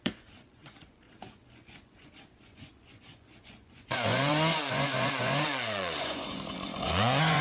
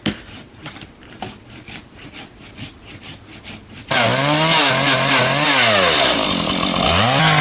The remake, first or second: first